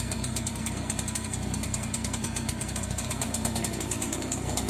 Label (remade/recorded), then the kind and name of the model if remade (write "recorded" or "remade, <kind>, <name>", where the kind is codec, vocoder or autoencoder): remade, codec, SNAC